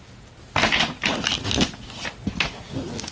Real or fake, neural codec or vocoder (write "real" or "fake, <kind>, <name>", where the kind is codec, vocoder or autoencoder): real